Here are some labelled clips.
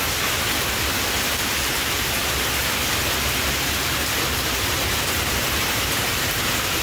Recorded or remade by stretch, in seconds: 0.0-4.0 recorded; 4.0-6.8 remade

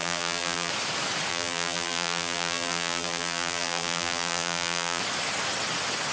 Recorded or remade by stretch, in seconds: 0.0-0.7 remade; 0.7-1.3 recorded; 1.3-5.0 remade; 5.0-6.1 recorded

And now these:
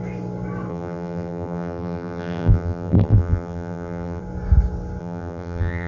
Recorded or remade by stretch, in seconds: 0.0-0.7 recorded; 0.7-4.2 remade; 4.2-5.0 recorded; 5.0-5.9 remade